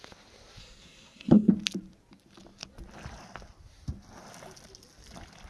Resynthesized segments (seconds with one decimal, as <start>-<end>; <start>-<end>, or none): 0.6-1.5

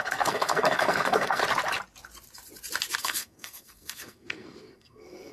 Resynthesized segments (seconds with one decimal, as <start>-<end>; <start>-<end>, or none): 0.0-1.4; 3.0-5.3

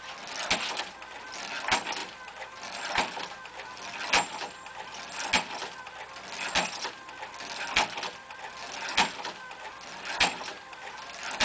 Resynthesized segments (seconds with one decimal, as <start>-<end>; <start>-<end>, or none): none

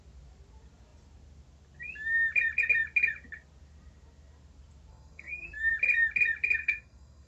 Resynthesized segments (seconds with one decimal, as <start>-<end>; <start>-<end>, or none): 4.9-5.7; 6.6-7.3

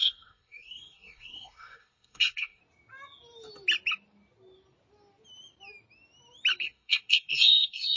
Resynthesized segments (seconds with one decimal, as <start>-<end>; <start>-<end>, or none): 0.0-2.6; 6.6-8.0

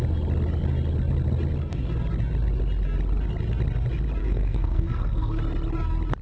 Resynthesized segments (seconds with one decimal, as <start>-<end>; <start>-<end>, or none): 4.2-5.4